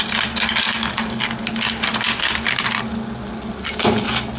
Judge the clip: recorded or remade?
recorded